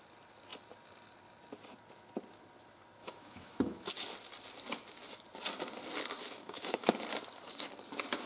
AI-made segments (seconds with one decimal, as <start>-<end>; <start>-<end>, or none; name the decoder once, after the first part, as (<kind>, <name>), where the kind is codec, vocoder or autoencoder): 3.0-3.9 (autoencoder, DAC-VAE); 6.2-6.9